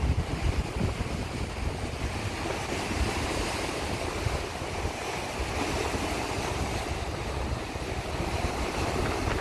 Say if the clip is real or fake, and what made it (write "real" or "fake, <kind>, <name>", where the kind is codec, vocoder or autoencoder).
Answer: real